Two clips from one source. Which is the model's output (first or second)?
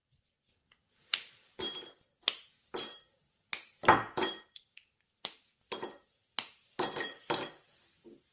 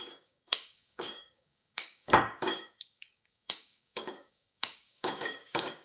second